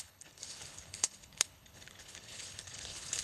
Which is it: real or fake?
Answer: fake